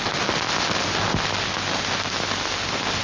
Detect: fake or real real